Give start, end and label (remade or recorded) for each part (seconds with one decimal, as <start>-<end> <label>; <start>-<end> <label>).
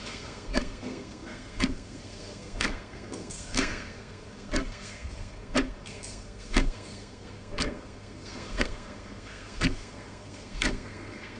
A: 0.0-11.4 remade